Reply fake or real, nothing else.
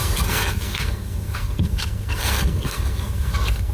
fake